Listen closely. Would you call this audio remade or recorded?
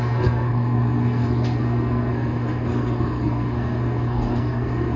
remade